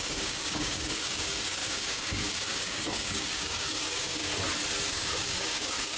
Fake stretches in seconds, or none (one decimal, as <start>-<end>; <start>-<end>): 0.0-4.3; 4.9-6.0